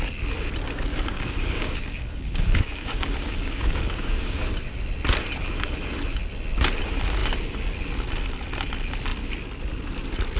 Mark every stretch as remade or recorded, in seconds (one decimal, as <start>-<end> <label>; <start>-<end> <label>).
0.0-0.9 recorded; 0.9-4.4 remade; 4.4-10.4 recorded